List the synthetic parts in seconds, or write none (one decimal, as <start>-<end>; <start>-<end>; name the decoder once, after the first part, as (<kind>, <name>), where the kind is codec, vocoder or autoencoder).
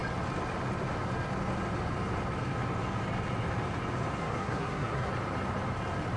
4.2-5.1 (codec, SNAC)